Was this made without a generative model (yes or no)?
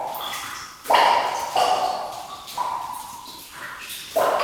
yes